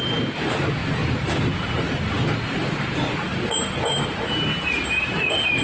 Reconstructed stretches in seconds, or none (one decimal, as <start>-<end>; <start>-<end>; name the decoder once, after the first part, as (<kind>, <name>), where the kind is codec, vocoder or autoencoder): none